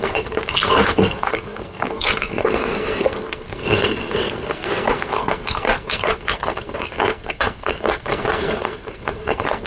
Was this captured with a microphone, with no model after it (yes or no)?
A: no